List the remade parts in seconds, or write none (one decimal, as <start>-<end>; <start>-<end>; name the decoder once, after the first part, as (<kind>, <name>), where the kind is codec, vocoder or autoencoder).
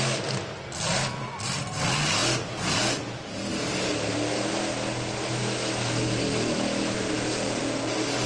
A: 5.4-6.2 (autoencoder, DAC-VAE)